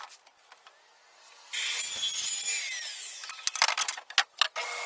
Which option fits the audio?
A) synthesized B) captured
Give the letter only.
B